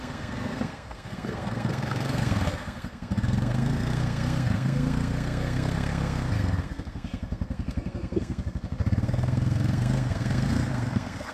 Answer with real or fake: fake